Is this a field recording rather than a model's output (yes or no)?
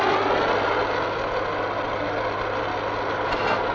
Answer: yes